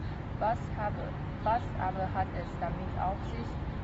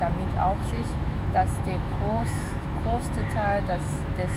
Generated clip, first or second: second